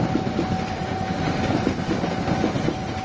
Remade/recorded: recorded